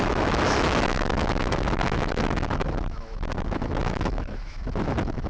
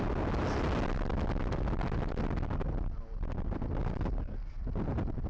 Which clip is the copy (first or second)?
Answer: first